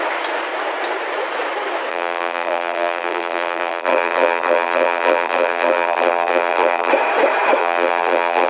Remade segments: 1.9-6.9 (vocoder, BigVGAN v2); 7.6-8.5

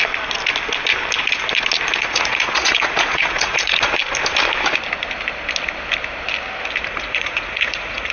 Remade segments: 2.0-4.0 (vocoder, Vocos); 6.9-8.1

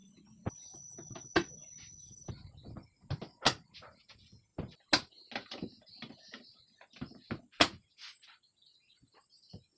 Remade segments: none

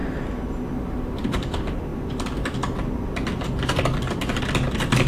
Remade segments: none

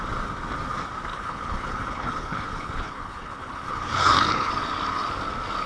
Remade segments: 1.1-4.5 (codec, HILCodec)

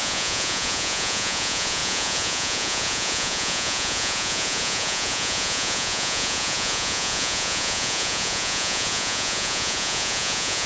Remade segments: 0.0-10.7 (vocoder, Vocos)

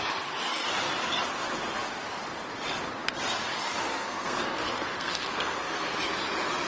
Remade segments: 3.9-6.0 (codec, SNAC)